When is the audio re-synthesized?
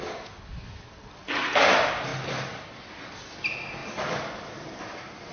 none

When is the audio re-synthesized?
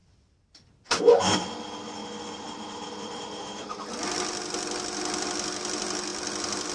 2.0-3.9 (vocoder, BigVGAN v2)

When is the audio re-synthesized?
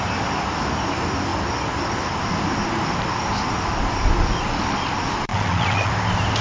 5.3-5.9 (vocoder, WaveNeXt)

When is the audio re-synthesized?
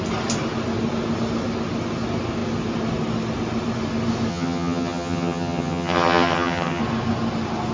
4.3-6.8 (vocoder, HiFi-GAN)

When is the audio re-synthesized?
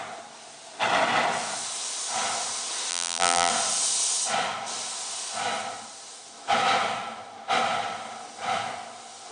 2.9-3.5 (vocoder, BigVGAN v2)